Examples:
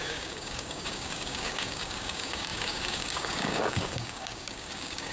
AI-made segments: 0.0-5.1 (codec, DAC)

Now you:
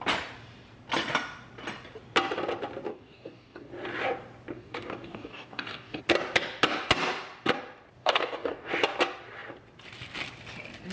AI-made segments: 2.9-3.7 (codec, DAC); 4.5-6.0; 8.0-8.7

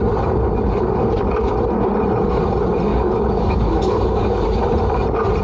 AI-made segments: 2.9-4.4 (codec, DAC)

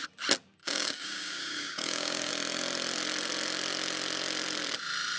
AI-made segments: 0.6-2.3 (codec, DAC)